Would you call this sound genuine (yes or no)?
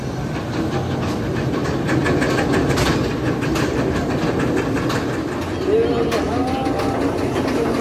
yes